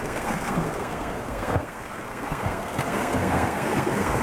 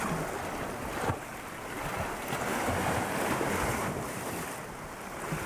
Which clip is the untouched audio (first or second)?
second